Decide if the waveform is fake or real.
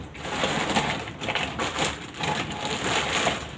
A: real